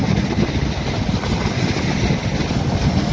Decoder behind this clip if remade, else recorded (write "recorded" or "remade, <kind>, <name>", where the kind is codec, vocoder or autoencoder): recorded